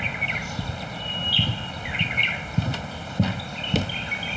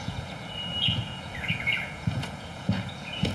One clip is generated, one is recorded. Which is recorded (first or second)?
first